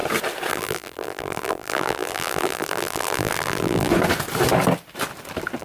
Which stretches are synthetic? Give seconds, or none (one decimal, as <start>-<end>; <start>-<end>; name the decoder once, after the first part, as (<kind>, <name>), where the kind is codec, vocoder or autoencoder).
0.5-3.9 (vocoder, BigVGAN v2)